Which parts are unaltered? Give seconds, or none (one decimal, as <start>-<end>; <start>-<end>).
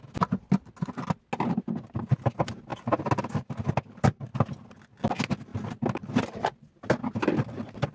0.0-7.9